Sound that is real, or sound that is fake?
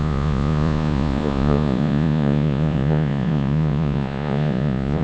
fake